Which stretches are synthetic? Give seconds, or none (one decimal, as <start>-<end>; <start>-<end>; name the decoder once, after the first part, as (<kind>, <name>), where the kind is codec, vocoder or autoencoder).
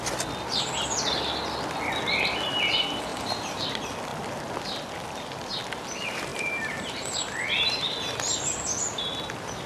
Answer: 3.1-3.6 (vocoder, BigVGAN v2); 6.3-7.2